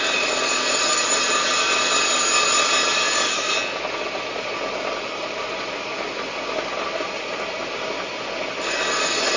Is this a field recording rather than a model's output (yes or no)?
yes